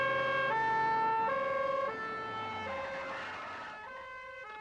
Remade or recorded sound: recorded